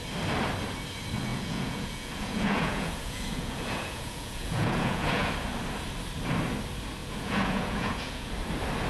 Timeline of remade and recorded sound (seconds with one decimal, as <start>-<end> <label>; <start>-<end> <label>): 0.0-1.3 recorded; 1.3-5.3 remade; 5.3-7.0 recorded; 7.0-8.3 remade; 8.3-8.9 recorded